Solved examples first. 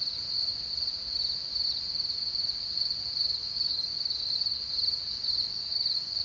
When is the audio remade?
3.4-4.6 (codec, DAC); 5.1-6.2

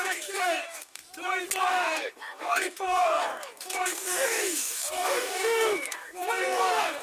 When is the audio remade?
0.0-1.0 (codec, DAC); 1.7-7.0

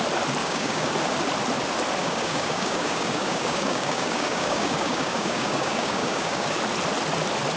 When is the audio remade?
0.4-0.9 (codec, DAC); 2.0-6.6